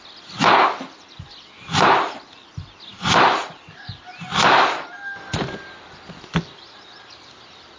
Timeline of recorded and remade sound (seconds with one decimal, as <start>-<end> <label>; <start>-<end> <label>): 0.0-7.8 recorded